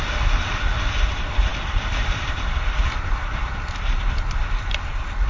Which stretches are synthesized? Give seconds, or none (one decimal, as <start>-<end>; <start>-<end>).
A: 1.5-4.7

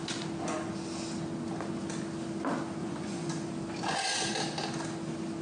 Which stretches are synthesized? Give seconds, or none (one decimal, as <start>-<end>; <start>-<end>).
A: 2.8-3.3

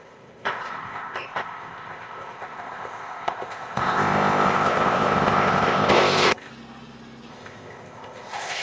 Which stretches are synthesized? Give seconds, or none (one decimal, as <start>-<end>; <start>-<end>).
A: 0.0-6.5; 7.3-8.6

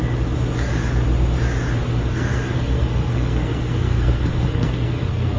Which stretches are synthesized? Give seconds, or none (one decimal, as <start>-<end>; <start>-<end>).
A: 2.0-5.4

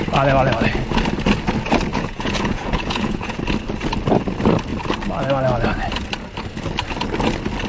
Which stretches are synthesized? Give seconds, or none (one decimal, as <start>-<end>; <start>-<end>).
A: 1.9-3.4